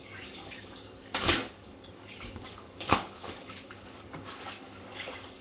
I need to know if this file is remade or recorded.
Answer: remade